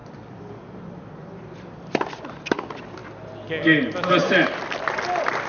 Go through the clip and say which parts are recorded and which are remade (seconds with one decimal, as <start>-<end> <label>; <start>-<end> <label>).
0.0-3.0 remade; 3.0-5.5 recorded